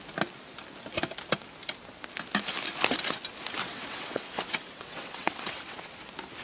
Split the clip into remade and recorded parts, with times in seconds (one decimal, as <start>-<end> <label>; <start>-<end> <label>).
0.0-3.6 recorded; 3.6-5.9 remade; 5.9-6.4 recorded